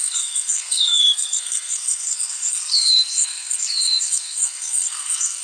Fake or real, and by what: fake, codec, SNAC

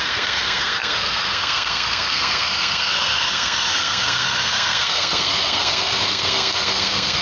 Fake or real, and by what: fake, codec, SNAC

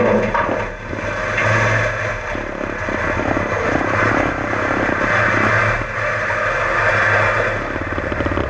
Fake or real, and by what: real